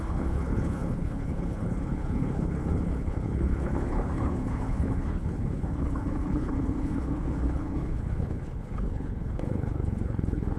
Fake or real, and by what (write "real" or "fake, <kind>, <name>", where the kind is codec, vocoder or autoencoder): fake, codec, HILCodec